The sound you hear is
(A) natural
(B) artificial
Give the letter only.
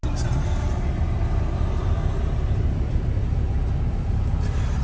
A